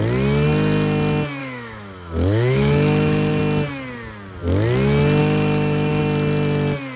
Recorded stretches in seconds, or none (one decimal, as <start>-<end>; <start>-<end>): 0.0-1.4; 3.4-5.2; 6.0-7.0